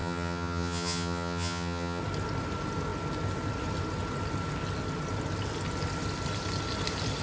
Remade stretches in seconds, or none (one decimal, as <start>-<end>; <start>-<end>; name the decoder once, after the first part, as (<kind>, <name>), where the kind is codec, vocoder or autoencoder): 0.0-2.0 (vocoder, HiFi-GAN)